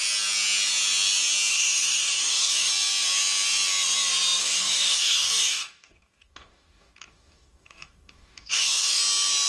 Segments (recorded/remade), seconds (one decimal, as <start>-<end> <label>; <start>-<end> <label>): 0.0-1.5 recorded; 1.5-2.7 remade; 2.7-4.4 recorded; 4.4-9.0 remade; 9.0-9.5 recorded